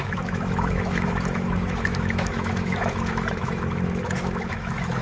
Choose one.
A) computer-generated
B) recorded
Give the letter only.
A